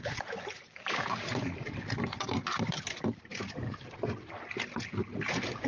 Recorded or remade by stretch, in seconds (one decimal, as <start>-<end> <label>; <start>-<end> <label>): 0.0-0.7 recorded; 0.7-1.2 remade; 1.2-5.7 recorded